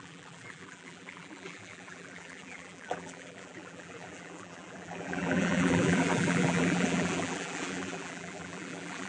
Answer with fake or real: fake